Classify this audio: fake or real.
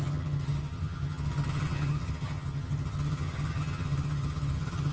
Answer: fake